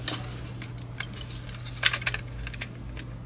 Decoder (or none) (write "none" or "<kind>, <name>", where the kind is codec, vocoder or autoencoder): none